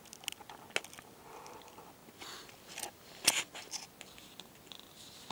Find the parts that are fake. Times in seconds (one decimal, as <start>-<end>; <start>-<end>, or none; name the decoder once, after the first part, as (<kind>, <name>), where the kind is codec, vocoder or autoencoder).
none